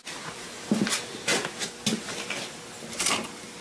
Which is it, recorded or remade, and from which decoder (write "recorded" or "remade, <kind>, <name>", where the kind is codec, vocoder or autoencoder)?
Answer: recorded